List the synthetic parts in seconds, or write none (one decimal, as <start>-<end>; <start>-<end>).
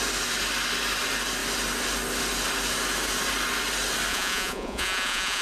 4.1-5.4